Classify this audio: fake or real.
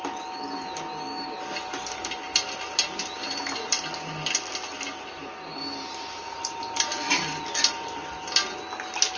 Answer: real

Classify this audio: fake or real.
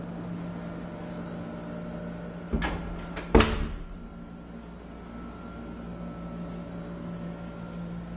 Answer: real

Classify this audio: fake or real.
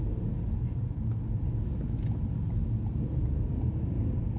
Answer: real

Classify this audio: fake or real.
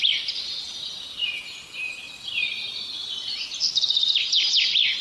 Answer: real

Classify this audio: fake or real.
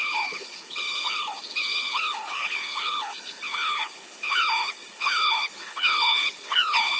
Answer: fake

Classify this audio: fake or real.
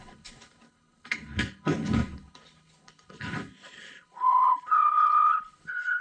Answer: fake